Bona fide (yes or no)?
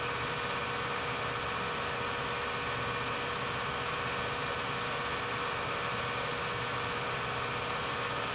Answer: yes